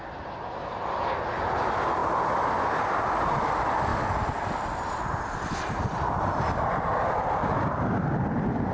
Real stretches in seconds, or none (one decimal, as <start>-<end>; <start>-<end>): 0.0-8.7